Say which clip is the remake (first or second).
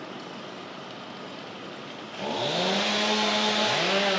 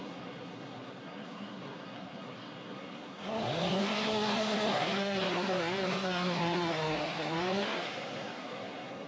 second